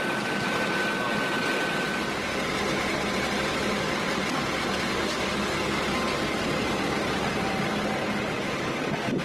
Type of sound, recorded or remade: recorded